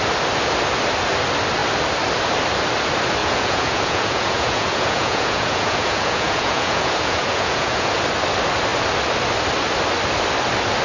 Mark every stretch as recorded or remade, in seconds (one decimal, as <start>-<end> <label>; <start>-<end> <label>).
0.0-3.2 recorded; 3.2-8.0 remade; 8.0-10.8 recorded